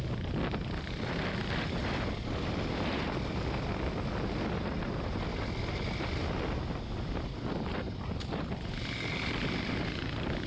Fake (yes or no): no